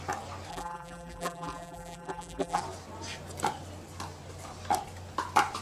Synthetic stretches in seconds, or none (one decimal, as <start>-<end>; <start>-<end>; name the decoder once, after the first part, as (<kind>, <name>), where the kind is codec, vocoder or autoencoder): 0.5-2.6 (vocoder, BigVGAN v2)